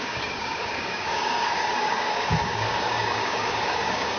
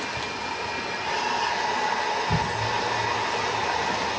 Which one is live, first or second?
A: second